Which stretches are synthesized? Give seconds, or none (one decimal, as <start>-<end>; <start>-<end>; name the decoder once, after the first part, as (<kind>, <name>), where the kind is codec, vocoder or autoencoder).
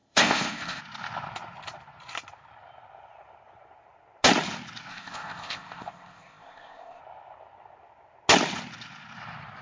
0.0-0.8 (codec, ZipCodec); 4.9-7.0